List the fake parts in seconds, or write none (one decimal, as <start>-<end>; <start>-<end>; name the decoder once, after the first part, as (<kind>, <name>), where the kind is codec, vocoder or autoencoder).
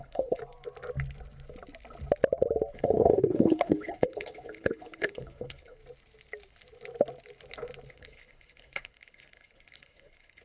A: 0.0-0.4 (codec, HILCodec); 2.7-5.8; 7.9-10.4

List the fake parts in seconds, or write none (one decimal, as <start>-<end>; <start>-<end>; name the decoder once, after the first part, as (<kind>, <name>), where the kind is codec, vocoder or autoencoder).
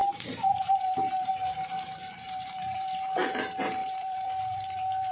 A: 0.0-5.1 (vocoder, BigVGAN v2)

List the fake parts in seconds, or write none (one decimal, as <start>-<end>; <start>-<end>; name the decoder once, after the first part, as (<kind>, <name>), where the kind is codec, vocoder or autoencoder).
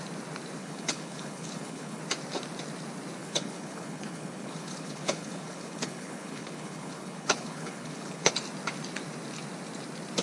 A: 0.6-2.0 (codec, HILCodec); 3.2-8.3